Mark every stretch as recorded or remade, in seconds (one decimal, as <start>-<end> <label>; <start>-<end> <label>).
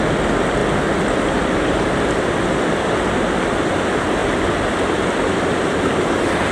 0.0-6.5 recorded